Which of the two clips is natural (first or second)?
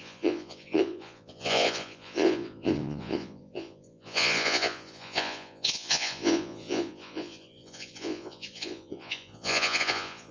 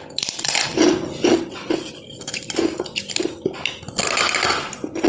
second